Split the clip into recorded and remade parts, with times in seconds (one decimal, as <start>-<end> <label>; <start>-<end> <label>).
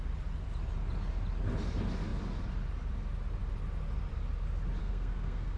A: 0.0-4.8 recorded; 4.8-5.6 remade